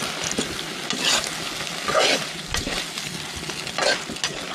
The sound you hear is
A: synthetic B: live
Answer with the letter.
B